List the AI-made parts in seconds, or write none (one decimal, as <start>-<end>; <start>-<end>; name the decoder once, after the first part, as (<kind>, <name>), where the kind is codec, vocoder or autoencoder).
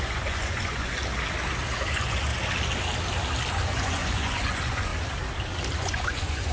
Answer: 0.0-1.0 (vocoder, Vocos); 1.9-2.3; 3.5-4.9; 5.8-6.5